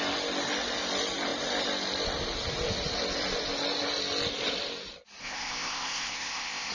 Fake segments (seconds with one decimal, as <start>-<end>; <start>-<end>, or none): 5.2-6.7